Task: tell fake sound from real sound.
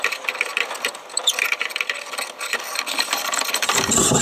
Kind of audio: fake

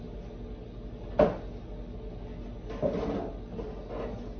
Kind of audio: real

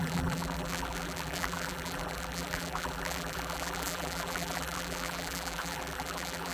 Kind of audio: fake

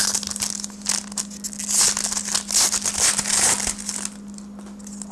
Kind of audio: real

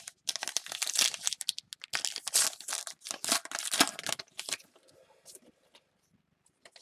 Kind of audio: real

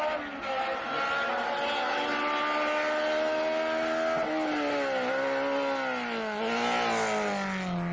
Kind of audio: real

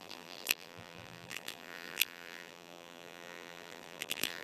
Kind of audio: fake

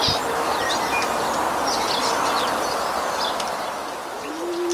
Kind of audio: real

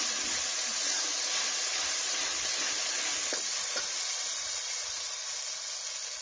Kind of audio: real